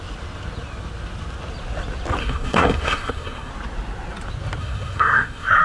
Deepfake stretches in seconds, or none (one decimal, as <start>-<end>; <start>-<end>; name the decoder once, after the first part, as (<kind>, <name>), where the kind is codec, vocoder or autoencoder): 2.2-3.5 (codec, SNAC); 4.6-5.6